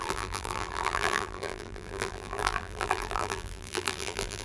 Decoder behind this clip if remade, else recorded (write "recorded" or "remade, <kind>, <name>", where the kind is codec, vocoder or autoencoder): remade, vocoder, BigVGAN v2